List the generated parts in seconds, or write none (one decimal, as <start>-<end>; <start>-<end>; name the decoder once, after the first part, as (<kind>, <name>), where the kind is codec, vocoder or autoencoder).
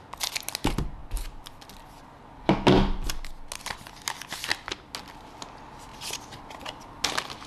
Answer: none